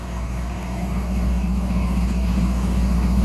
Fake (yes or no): yes